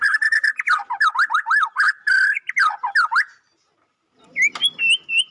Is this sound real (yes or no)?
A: yes